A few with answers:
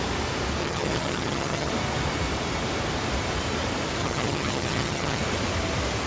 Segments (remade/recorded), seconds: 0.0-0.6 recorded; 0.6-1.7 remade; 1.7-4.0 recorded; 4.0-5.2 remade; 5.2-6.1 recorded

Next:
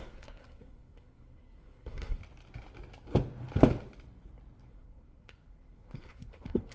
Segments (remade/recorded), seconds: 0.0-2.2 remade; 2.2-4.7 recorded; 4.7-6.7 remade

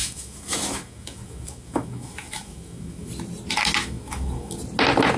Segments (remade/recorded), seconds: 0.0-3.1 remade; 3.1-3.8 recorded; 3.8-4.6 remade; 4.6-5.2 recorded

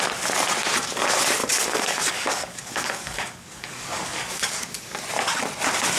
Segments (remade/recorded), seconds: 0.0-1.4 recorded; 1.4-5.0 remade; 5.0-6.0 recorded

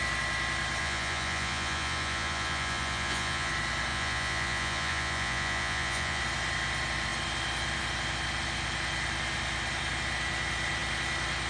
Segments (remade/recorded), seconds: 0.0-0.8 recorded; 0.8-3.5 remade; 3.5-3.9 recorded; 3.9-6.2 remade; 6.2-11.5 recorded

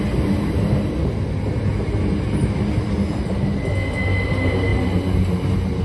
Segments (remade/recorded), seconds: 0.0-5.8 recorded

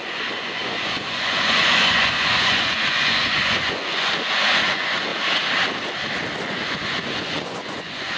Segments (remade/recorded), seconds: 0.0-5.1 remade; 5.1-6.4 recorded; 6.4-8.2 remade

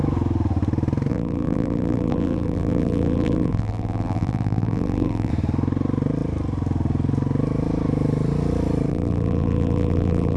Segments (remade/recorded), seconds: 0.0-1.1 recorded; 1.1-5.3 remade; 5.3-8.9 recorded; 8.9-10.4 remade